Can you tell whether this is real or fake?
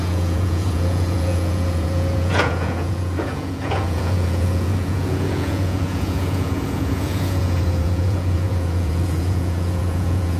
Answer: fake